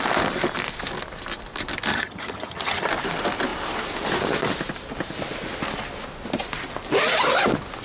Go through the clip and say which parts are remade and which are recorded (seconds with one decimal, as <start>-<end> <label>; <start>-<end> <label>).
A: 0.0-1.9 recorded; 1.9-2.9 remade; 2.9-7.8 recorded

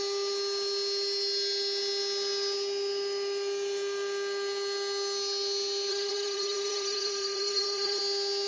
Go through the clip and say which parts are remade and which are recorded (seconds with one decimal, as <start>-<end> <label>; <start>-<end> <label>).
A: 0.0-5.9 recorded; 5.9-8.0 remade; 8.0-8.5 recorded

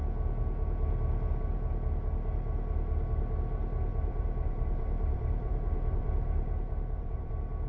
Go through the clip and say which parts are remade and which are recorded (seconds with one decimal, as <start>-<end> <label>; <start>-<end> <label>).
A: 0.0-3.9 recorded; 3.9-7.3 remade; 7.3-7.7 recorded

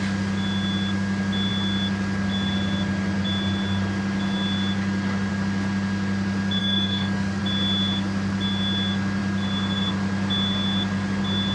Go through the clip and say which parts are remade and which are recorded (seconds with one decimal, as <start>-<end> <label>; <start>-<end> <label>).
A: 0.0-6.6 recorded; 6.6-7.4 remade; 7.4-11.5 recorded

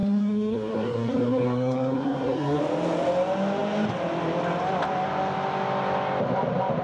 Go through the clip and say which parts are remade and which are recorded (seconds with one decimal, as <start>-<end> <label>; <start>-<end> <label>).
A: 0.0-2.6 remade; 2.6-6.8 recorded

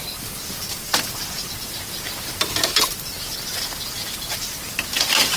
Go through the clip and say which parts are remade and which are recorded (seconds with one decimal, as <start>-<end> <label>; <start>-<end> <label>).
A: 0.0-5.4 recorded

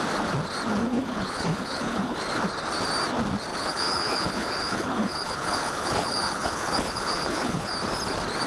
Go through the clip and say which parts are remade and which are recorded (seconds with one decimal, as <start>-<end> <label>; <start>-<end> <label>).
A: 0.0-0.8 recorded; 0.8-2.2 remade; 2.2-3.5 recorded; 3.5-7.7 remade; 7.7-8.5 recorded

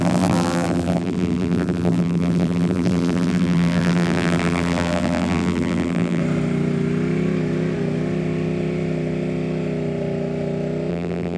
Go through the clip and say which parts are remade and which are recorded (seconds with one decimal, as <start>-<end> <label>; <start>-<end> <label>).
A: 0.0-6.2 remade; 6.2-10.9 recorded; 10.9-11.4 remade